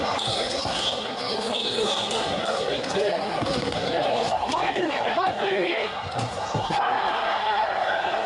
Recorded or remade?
remade